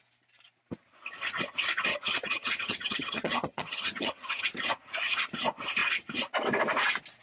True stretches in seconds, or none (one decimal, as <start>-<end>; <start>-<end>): 0.0-1.9; 4.4-7.2